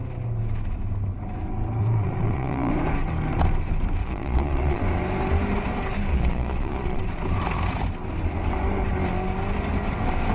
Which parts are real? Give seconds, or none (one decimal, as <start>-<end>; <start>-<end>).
0.0-1.8; 2.7-4.0; 4.8-6.1; 7.0-10.3